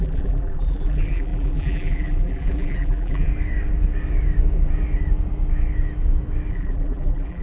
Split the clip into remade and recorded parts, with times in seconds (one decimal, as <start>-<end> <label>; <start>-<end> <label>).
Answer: 0.0-3.3 remade; 3.3-6.5 recorded; 6.5-7.4 remade